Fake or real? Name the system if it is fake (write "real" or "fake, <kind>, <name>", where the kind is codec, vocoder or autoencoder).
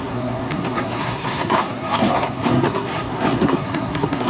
fake, codec, SNAC